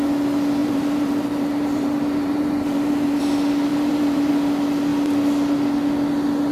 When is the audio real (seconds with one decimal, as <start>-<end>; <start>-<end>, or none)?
0.0-0.6; 3.2-3.7; 4.3-6.5